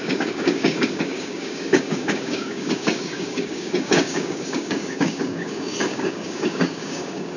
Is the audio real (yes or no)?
no